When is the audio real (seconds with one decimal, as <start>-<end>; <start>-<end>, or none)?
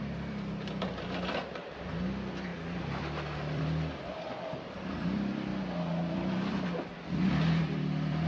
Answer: 5.5-6.1